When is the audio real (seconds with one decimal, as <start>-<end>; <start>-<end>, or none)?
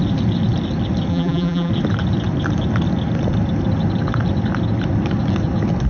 0.0-1.1; 1.7-5.9